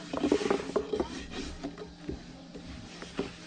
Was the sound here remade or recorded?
recorded